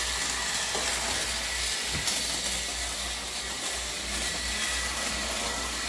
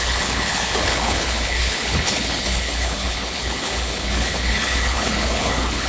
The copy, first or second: second